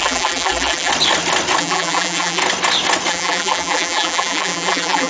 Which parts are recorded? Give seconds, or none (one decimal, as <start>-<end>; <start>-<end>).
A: 0.9-1.6; 2.4-3.1